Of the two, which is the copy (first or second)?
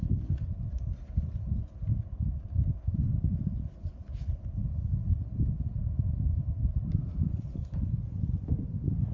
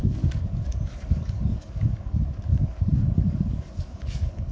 second